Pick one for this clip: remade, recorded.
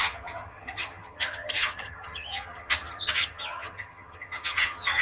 remade